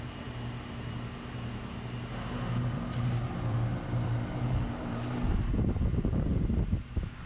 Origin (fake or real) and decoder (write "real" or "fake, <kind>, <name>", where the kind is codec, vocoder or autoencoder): fake, vocoder, BigVGAN v2